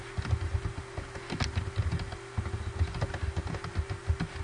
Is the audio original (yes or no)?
yes